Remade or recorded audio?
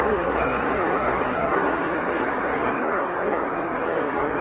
remade